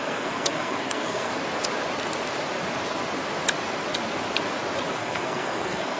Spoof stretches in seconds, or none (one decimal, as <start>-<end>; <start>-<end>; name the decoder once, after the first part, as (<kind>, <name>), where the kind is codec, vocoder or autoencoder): 0.0-1.3 (codec, SNAC); 4.9-6.0

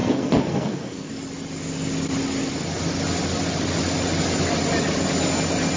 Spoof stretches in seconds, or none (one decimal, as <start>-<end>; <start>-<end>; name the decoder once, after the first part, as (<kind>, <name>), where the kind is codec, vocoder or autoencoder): 0.0-1.1 (codec, SNAC)

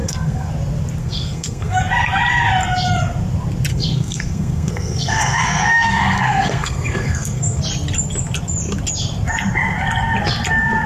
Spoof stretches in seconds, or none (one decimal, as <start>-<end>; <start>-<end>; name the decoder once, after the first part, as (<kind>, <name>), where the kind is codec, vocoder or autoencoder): 0.0-0.5 (codec, SNAC); 1.0-1.8; 3.7-7.6

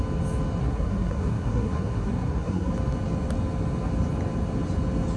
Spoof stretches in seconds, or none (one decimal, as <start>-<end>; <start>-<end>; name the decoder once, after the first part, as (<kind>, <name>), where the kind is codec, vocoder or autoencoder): 0.6-2.7 (codec, SNAC)

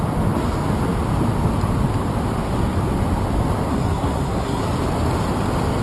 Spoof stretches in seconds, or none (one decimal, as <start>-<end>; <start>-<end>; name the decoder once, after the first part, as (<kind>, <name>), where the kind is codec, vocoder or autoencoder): 3.7-4.6 (codec, SNAC)

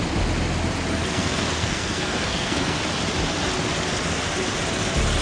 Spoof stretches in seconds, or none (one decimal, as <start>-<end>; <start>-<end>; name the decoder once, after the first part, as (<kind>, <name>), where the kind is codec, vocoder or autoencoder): 1.1-2.8 (codec, SNAC)

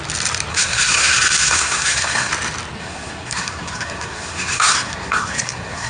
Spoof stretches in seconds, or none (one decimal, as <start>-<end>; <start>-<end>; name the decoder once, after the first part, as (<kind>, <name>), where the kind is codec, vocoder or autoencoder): 0.5-2.3 (codec, SNAC); 2.8-5.9